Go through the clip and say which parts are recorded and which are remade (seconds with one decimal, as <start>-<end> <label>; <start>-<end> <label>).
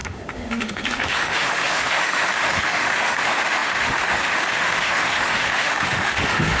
0.0-6.6 remade